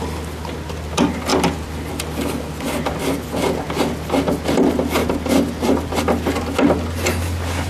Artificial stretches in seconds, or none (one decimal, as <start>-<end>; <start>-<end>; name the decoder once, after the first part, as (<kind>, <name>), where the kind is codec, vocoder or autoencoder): none